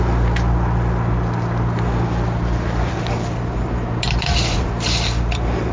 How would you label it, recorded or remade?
recorded